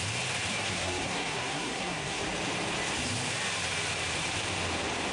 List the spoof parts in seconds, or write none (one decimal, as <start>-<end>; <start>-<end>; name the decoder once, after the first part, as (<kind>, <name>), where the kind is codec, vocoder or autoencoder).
0.5-2.2 (codec, SNAC)